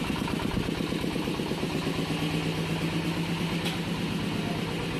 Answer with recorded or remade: recorded